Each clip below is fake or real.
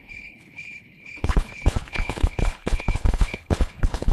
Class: fake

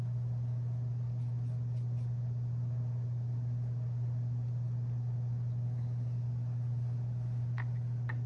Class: real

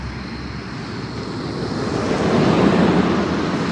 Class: real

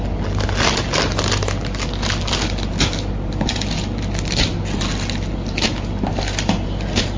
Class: real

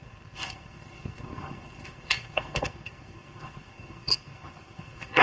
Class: fake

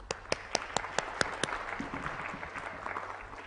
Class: real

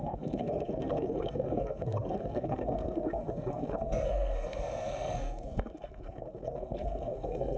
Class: fake